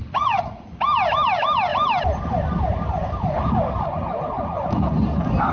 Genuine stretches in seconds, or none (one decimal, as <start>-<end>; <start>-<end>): 0.8-5.5